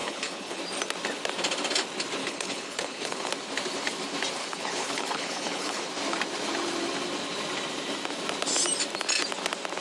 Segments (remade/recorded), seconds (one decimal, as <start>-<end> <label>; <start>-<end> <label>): 0.0-0.6 remade; 0.6-2.2 recorded; 2.2-3.3 remade; 3.3-4.4 recorded; 4.4-5.8 remade; 5.8-9.8 recorded